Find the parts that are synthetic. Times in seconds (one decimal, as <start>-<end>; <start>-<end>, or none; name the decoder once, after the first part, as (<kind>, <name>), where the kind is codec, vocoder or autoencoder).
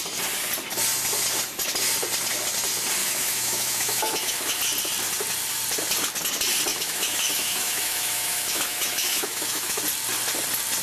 3.0-4.6 (autoencoder, DAC-VAE); 6.7-9.8